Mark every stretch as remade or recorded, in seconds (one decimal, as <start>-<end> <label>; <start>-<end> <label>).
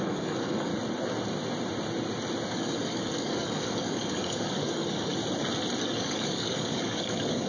0.0-0.7 remade; 0.7-2.5 recorded; 2.5-5.2 remade; 5.2-5.8 recorded; 5.8-7.5 remade